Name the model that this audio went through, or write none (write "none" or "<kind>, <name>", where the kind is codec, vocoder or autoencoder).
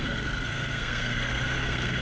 codec, SNAC